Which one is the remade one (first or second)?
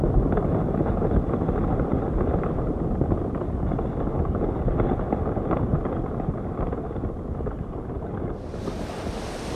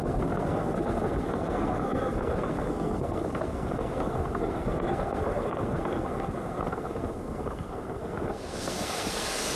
second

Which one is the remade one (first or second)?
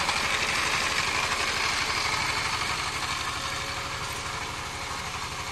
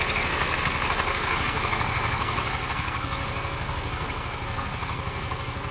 second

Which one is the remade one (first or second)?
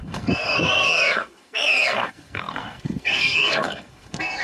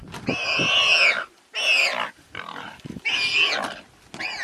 first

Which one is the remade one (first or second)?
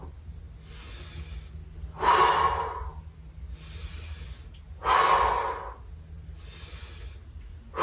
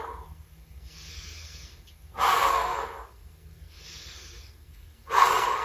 second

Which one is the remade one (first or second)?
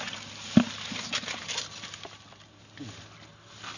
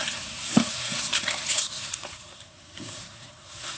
second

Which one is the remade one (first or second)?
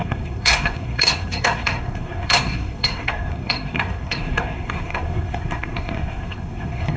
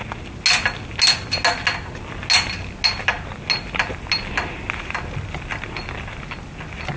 first